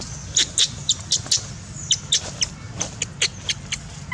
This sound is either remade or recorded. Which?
recorded